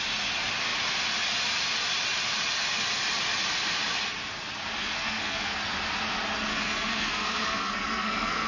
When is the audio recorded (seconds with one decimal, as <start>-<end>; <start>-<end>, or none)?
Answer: 0.0-4.8; 5.6-6.5